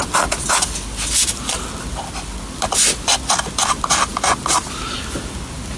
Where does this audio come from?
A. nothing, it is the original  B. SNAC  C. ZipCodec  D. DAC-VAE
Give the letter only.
A